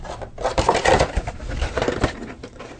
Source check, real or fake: real